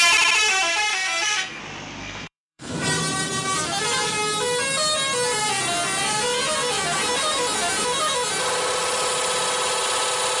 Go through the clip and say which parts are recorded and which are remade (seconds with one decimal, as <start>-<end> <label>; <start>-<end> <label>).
0.0-0.9 recorded; 0.9-1.6 remade; 1.6-2.0 recorded; 2.0-2.7 remade; 2.7-10.4 recorded